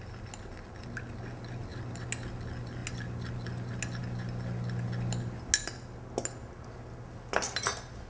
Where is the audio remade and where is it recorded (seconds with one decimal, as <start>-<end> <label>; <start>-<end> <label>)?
0.0-8.1 recorded